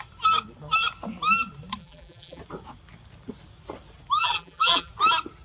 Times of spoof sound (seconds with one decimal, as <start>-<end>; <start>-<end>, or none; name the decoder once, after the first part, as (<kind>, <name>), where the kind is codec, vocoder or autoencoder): 1.8-2.4 (vocoder, BigVGAN v2); 4.2-4.9